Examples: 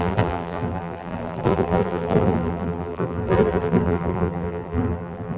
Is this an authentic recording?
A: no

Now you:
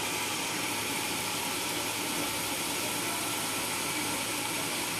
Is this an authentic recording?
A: no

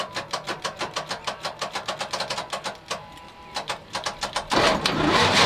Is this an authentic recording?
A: yes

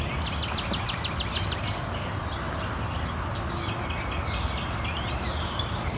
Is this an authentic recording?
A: yes